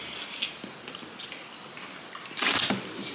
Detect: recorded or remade recorded